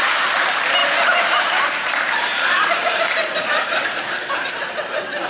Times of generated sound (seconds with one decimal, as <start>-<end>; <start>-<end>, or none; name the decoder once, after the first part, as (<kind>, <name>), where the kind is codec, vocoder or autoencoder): 0.8-4.0 (vocoder, BigVGAN v2)